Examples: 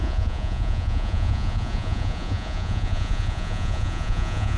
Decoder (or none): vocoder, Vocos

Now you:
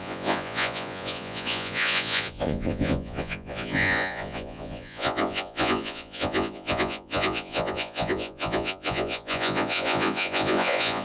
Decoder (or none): vocoder, Vocos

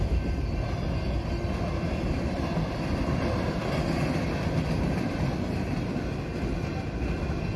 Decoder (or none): none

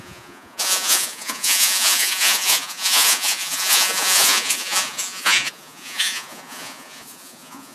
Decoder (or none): vocoder, Vocos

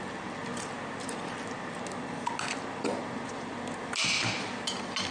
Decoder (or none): none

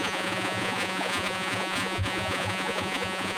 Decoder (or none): vocoder, Vocos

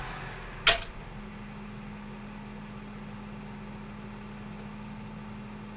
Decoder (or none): none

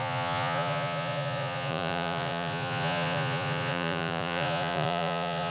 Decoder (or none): vocoder, Vocos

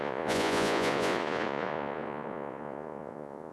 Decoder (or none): vocoder, Vocos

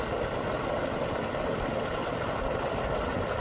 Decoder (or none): none